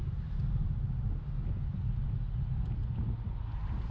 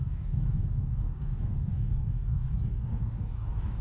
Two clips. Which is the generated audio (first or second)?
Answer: second